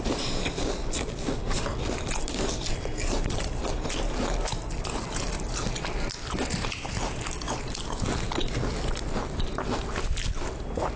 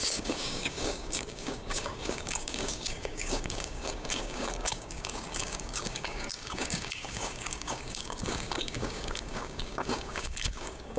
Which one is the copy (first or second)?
second